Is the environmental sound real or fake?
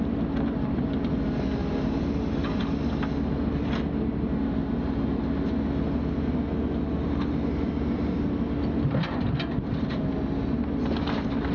real